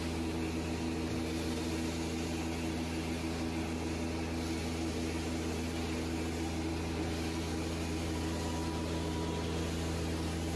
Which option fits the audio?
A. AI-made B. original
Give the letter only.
B